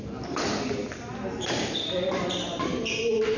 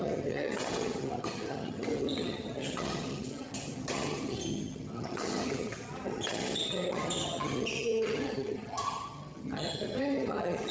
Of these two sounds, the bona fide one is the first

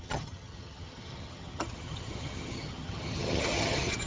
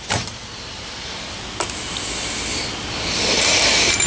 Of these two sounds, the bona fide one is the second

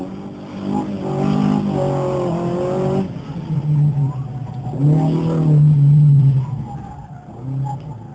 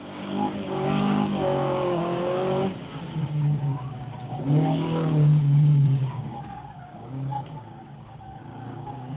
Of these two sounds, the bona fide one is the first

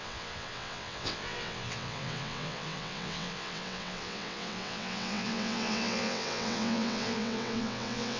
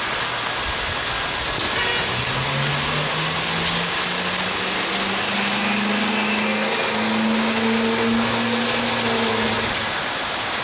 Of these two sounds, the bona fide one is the second